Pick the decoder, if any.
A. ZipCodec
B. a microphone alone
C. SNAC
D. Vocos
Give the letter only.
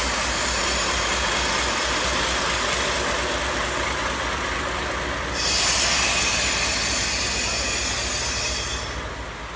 B